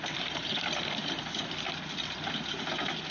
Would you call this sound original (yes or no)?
yes